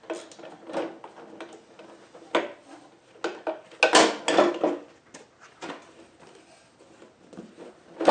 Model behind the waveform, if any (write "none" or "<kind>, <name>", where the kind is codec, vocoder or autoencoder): none